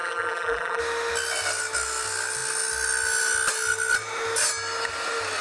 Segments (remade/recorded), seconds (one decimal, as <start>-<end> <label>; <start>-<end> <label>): 0.0-0.8 remade; 0.8-5.4 recorded